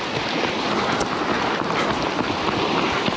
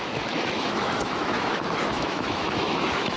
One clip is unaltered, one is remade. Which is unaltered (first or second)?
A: first